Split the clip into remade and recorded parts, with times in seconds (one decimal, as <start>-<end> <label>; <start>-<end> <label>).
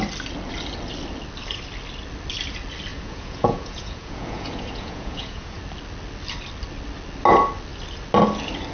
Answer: 0.0-2.9 recorded; 2.9-5.6 remade; 5.6-8.7 recorded